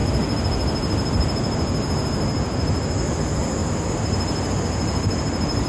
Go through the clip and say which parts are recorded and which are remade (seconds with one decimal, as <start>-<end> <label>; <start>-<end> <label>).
0.0-3.6 recorded; 3.6-4.5 remade; 4.5-5.7 recorded